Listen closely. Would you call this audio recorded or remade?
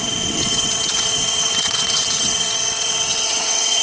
remade